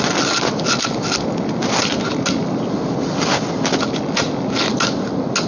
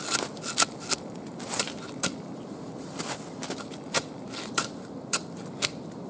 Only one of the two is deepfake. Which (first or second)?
second